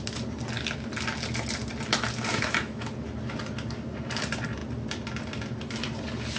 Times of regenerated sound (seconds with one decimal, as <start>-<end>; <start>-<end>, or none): 2.3-2.9